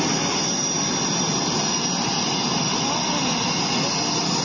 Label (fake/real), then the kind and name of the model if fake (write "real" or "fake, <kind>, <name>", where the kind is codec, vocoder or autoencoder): real